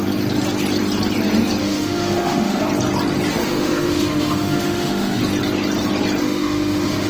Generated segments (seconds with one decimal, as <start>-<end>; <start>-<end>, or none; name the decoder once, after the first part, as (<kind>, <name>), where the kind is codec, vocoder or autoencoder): 1.6-2.6 (autoencoder, DAC-VAE); 3.3-5.2; 6.2-7.1